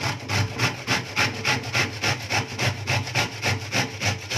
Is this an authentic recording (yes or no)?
yes